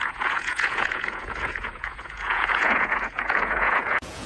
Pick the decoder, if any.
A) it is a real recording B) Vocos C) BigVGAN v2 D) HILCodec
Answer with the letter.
B